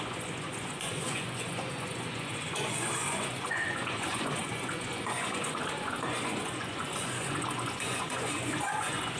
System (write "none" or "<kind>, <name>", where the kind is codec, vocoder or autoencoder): vocoder, Vocos